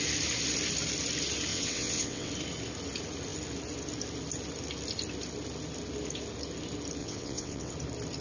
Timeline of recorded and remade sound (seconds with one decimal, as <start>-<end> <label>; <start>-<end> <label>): 0.0-1.5 recorded; 1.5-2.3 remade; 2.3-7.0 recorded; 7.0-7.7 remade; 7.7-8.2 recorded